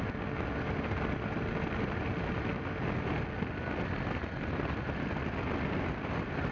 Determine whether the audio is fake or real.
real